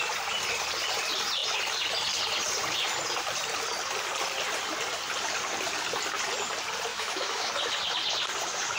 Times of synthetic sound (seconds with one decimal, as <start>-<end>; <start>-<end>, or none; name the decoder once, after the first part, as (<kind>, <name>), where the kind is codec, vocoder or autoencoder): 6.9-7.5 (autoencoder, DAC-VAE)